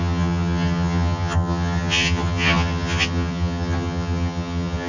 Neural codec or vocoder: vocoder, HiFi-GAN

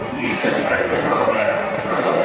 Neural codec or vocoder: codec, SNAC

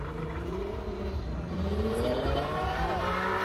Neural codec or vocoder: vocoder, BigVGAN v2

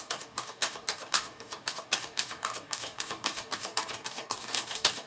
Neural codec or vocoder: codec, DAC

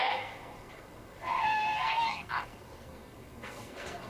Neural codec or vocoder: codec, SNAC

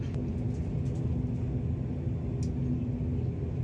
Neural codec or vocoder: none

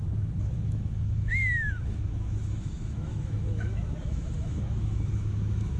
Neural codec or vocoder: autoencoder, DAC-VAE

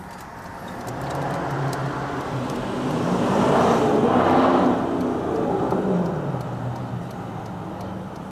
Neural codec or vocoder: none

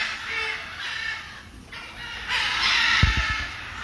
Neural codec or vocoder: none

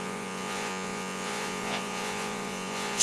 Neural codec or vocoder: vocoder, Vocos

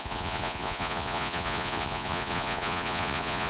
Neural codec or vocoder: vocoder, Vocos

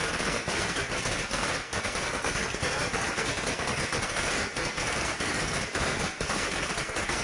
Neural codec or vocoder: codec, SNAC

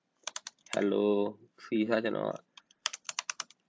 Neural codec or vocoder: vocoder, BigVGAN v2